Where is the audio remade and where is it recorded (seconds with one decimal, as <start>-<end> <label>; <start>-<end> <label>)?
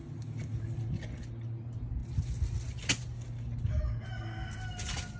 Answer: 0.0-5.2 recorded